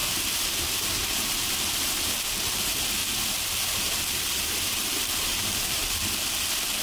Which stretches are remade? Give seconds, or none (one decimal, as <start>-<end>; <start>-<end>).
0.0-3.0; 3.6-5.8